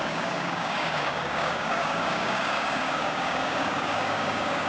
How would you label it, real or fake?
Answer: fake